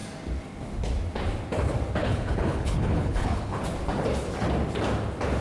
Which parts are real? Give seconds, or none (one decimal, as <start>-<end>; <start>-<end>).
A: 0.0-2.0; 3.6-5.4